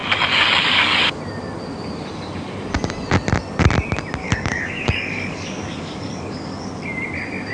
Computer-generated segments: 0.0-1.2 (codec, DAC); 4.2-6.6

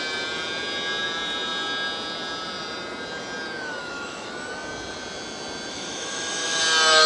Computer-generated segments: 3.8-4.3 (autoencoder, DAC-VAE); 5.7-6.6

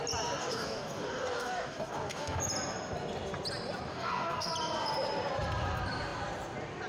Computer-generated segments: 0.4-2.4 (codec, DAC); 3.9-4.5

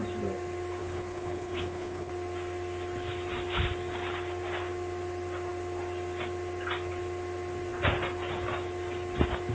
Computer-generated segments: 0.8-2.1 (codec, HILCodec)

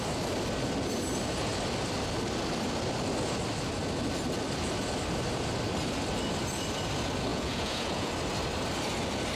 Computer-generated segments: 7.3-8.1 (vocoder, Vocos)